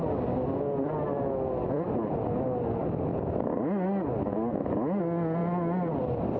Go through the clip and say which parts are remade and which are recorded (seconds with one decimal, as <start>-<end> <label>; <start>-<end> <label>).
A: 0.0-6.4 recorded